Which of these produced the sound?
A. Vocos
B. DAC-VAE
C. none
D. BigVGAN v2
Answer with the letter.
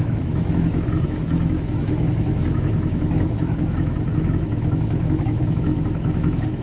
B